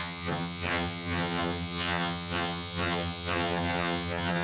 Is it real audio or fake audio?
fake